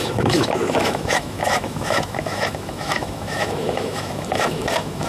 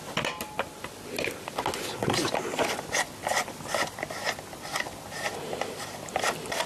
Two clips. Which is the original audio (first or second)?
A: second